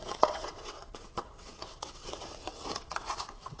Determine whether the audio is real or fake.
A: fake